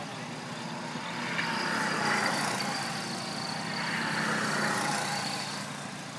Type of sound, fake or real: real